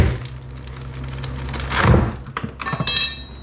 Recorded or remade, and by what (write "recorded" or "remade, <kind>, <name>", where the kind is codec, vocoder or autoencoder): recorded